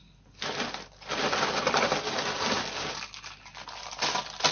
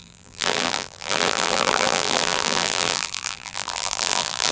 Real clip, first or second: first